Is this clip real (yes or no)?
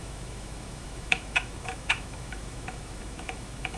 no